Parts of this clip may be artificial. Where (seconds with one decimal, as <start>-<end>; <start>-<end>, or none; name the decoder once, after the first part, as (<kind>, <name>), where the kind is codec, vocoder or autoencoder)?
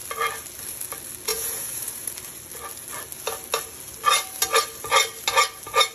1.3-2.1 (vocoder, Vocos)